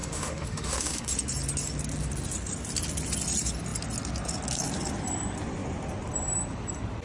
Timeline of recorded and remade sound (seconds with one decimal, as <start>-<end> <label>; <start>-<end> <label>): 0.0-1.1 remade; 1.1-7.0 recorded